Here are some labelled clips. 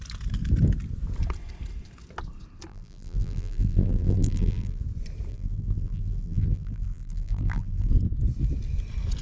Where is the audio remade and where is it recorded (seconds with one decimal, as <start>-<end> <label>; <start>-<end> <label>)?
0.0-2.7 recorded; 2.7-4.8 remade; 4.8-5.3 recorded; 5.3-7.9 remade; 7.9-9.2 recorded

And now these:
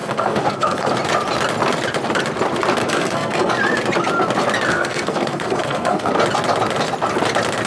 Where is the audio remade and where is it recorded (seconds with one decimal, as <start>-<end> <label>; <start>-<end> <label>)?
0.0-0.9 remade; 0.9-2.8 recorded; 2.8-3.5 remade; 3.5-4.7 recorded; 4.7-6.1 remade; 6.1-7.7 recorded

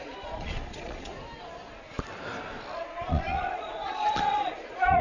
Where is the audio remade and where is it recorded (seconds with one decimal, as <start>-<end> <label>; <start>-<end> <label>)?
0.0-1.1 remade; 1.1-3.1 recorded; 3.1-5.0 remade

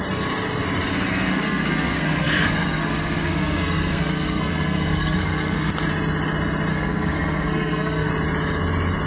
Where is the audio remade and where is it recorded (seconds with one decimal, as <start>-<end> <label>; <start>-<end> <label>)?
0.0-1.1 recorded; 1.1-5.7 remade; 5.7-6.7 recorded; 6.7-8.1 remade; 8.1-9.1 recorded